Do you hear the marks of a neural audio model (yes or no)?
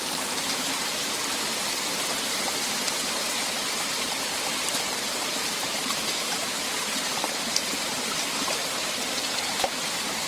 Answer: yes